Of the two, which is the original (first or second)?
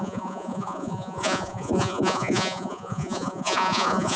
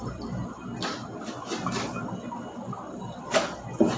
second